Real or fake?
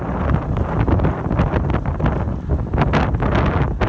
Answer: real